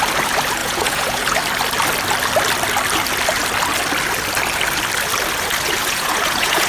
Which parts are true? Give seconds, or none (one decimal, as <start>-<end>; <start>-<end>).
0.0-0.6; 1.4-5.8